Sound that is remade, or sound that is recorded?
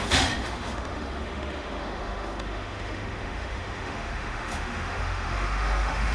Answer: remade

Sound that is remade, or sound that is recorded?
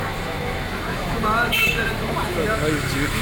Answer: remade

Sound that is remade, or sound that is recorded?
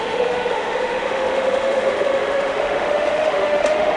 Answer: remade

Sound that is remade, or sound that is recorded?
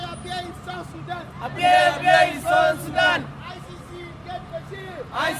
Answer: recorded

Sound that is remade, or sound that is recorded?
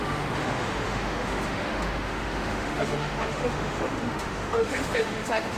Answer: remade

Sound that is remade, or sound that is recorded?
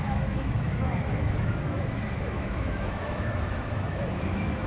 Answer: remade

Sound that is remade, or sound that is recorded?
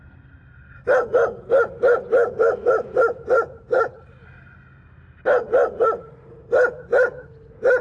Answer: recorded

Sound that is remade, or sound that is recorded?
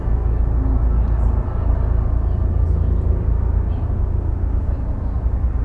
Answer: recorded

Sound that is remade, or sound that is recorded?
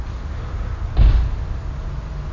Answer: recorded